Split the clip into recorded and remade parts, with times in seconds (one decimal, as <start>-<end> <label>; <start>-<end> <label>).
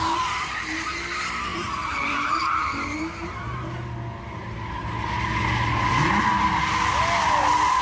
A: 0.0-1.5 recorded; 1.5-3.0 remade; 3.0-7.8 recorded